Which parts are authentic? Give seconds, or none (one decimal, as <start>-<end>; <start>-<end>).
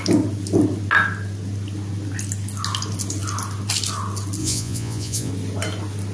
0.0-4.4; 5.3-6.1